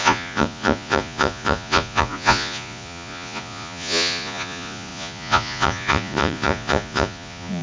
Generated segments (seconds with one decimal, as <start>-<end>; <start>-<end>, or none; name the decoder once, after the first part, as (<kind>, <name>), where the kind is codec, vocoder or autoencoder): 0.0-7.6 (vocoder, Vocos)